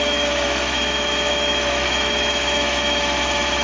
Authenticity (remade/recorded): remade